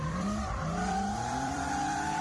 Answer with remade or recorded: remade